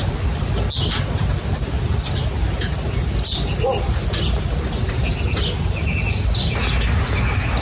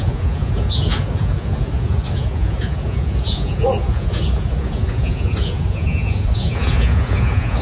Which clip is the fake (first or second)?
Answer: second